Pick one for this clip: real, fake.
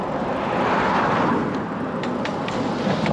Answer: real